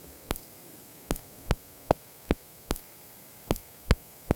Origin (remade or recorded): remade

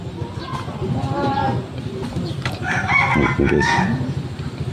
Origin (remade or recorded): recorded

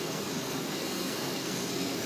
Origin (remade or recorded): remade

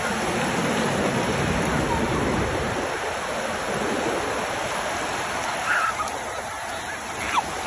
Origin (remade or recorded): recorded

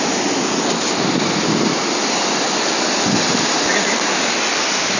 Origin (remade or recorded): recorded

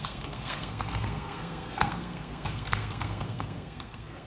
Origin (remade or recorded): remade